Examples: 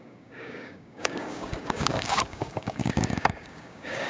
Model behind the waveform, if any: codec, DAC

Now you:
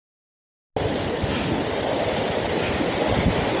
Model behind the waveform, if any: none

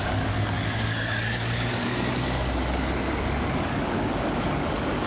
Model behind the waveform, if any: codec, DAC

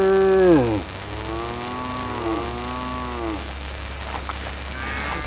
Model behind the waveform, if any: none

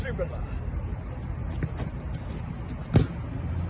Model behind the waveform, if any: none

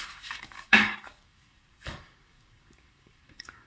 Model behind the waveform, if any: codec, DAC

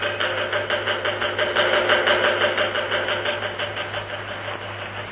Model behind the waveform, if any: none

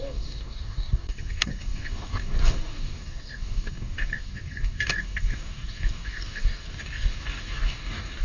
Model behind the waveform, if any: codec, DAC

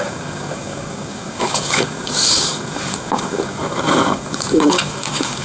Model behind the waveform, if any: codec, DAC